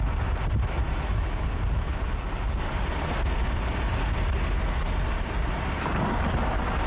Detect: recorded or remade recorded